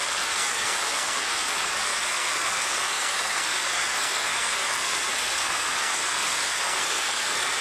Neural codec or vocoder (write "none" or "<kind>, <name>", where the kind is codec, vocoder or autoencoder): codec, SNAC